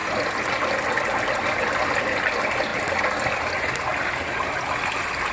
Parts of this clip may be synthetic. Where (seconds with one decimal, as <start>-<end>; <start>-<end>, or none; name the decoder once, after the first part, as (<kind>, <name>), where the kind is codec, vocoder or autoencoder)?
none